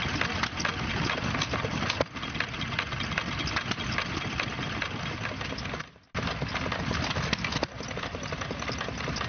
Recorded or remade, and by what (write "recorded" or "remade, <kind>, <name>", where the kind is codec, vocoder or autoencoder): recorded